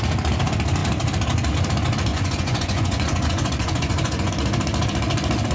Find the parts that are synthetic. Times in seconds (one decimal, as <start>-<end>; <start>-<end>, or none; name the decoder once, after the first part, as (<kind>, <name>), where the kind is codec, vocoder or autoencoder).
2.1-4.3 (vocoder, Vocos)